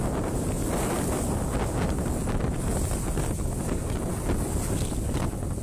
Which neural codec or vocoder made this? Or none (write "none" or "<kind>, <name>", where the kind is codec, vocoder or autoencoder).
none